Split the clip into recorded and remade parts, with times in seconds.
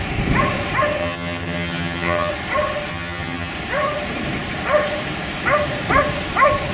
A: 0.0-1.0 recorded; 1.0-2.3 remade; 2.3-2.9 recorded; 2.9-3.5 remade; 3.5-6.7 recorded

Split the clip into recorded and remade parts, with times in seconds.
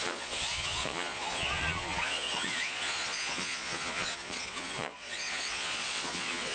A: 0.0-6.5 remade